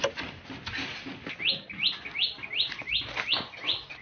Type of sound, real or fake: real